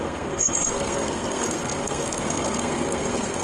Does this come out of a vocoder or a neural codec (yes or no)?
yes